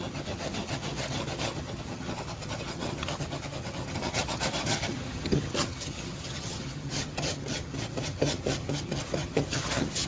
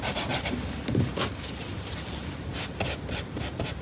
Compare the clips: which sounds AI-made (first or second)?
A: first